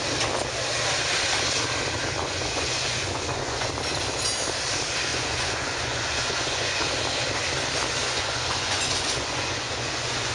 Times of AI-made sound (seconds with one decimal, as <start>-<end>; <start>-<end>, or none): 2.2-3.7; 5.1-6.8; 8.0-10.3